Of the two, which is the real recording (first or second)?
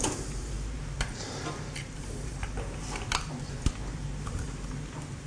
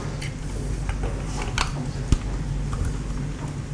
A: second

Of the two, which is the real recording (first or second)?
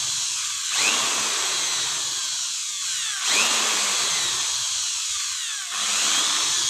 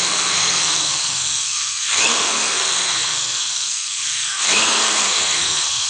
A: first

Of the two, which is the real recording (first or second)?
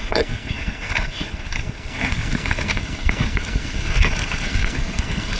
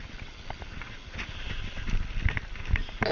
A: second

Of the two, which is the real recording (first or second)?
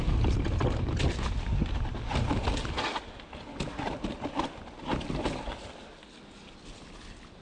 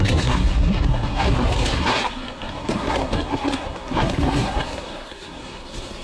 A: first